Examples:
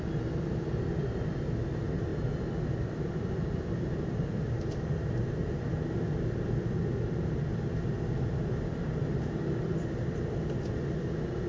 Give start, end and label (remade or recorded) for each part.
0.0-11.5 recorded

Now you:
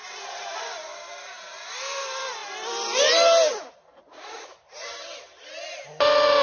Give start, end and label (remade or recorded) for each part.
0.0-6.4 remade

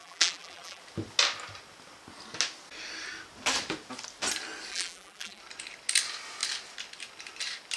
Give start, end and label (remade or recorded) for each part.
0.0-0.8 remade; 0.8-4.7 recorded; 4.7-5.4 remade; 5.4-7.8 recorded

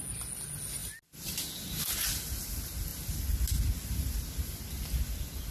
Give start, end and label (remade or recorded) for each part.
0.0-5.5 recorded

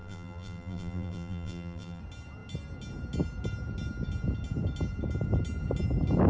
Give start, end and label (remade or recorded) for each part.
0.0-2.0 remade; 2.0-6.3 recorded

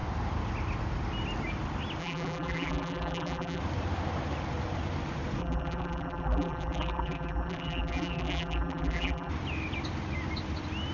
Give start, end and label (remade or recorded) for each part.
0.0-2.0 recorded; 2.0-3.6 remade; 3.6-5.4 recorded; 5.4-9.3 remade; 9.3-10.9 recorded

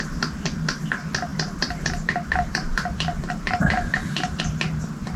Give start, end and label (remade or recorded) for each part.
0.0-1.3 recorded; 1.3-4.4 remade; 4.4-5.2 recorded